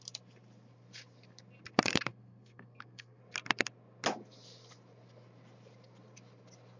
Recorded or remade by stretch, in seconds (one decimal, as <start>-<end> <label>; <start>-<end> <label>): 0.0-2.1 recorded; 2.1-3.2 remade; 3.2-6.8 recorded